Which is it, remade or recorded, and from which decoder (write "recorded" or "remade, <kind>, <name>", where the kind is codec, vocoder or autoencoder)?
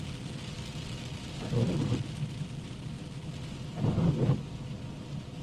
recorded